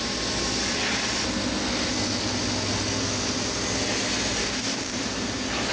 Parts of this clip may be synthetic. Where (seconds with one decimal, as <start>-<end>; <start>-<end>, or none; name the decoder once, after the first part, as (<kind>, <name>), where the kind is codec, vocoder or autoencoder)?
4.4-5.0 (codec, DAC)